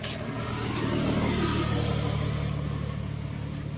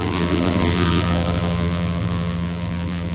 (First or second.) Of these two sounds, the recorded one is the first